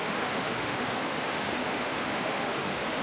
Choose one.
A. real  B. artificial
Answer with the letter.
B